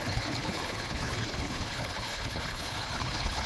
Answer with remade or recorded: remade